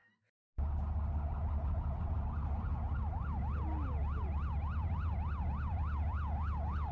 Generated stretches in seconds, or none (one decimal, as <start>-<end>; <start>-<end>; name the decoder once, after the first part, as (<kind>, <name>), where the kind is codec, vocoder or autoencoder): none